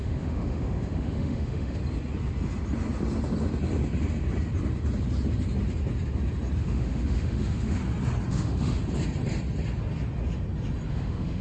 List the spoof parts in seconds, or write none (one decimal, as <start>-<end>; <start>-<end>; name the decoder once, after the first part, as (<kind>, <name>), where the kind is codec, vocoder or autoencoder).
0.0-1.8 (autoencoder, DAC-VAE); 6.6-7.8; 8.3-8.8; 10.9-11.4